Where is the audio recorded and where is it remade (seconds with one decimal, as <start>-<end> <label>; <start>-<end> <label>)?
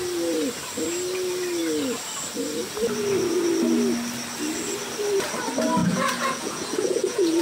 0.0-5.8 recorded; 5.8-7.4 remade